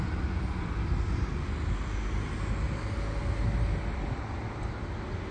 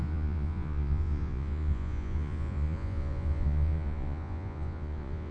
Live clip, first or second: first